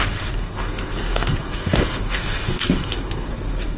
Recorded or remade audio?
remade